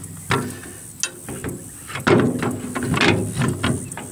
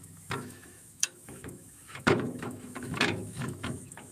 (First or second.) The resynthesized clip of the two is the second